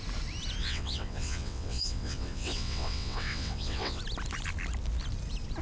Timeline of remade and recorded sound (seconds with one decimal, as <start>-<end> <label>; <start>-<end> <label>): 0.0-0.6 recorded; 0.6-4.0 remade; 4.0-5.6 recorded